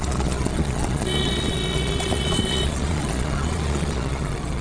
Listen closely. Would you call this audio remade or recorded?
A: remade